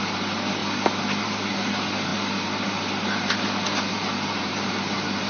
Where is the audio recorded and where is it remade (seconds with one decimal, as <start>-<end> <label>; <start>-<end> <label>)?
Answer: 0.0-0.6 remade; 0.6-1.2 recorded; 1.2-5.3 remade